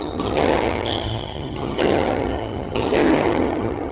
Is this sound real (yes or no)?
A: no